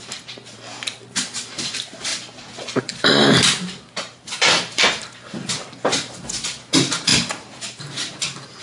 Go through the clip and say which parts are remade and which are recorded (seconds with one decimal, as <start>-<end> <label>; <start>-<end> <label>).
0.0-2.1 remade; 2.1-2.8 recorded; 2.8-8.6 remade